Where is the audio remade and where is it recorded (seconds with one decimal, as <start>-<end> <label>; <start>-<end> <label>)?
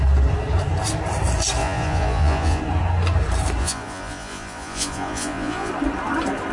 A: 0.0-1.6 recorded; 1.6-2.6 remade; 2.6-3.6 recorded; 3.6-5.7 remade; 5.7-6.5 recorded